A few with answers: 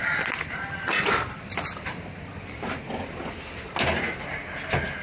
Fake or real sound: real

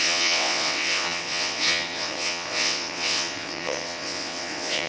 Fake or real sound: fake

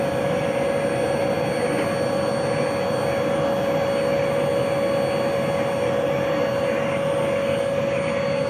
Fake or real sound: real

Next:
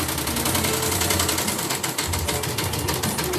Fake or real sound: real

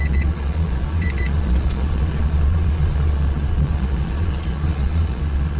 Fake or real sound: fake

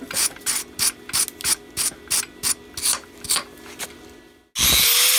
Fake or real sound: real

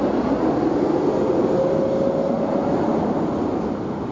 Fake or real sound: real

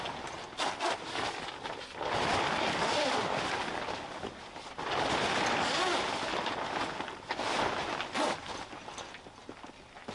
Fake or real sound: real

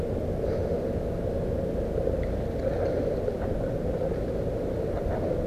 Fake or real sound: real